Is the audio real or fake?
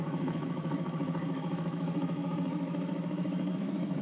fake